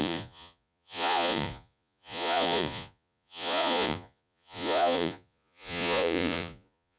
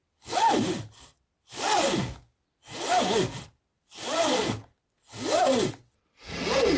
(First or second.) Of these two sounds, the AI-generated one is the first